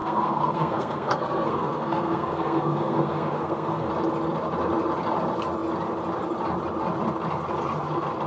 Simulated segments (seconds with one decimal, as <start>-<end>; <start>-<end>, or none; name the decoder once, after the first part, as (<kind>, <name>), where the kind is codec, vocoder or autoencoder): 0.0-3.9 (codec, SNAC)